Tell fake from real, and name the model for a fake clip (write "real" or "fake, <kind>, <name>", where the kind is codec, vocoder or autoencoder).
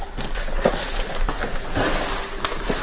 real